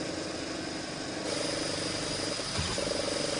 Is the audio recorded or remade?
recorded